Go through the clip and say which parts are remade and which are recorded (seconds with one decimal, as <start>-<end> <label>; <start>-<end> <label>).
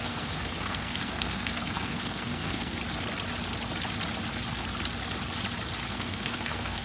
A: 0.0-2.8 remade; 2.8-5.9 recorded; 5.9-6.8 remade